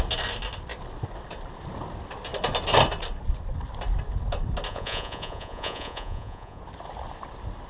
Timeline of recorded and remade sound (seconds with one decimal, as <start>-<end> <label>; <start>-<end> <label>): 0.0-4.7 recorded; 4.7-6.6 remade; 6.6-7.7 recorded